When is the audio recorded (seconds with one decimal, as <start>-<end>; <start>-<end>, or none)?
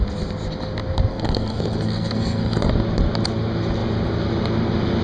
0.0-1.1; 2.7-5.0